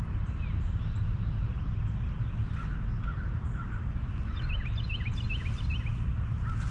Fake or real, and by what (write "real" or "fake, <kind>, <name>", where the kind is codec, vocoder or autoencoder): real